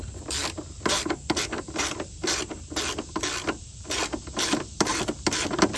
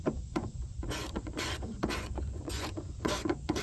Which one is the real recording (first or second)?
first